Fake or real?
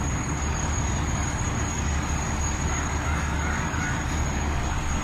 fake